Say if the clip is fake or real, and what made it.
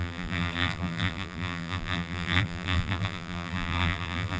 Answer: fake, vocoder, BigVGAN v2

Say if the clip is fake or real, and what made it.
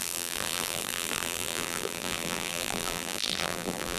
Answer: fake, vocoder, BigVGAN v2